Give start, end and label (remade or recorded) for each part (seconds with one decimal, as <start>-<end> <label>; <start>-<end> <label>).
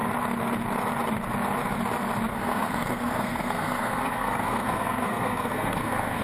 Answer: 0.0-2.3 recorded; 2.3-6.2 remade